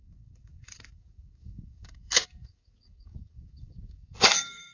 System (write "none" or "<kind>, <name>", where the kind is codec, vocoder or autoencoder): codec, DAC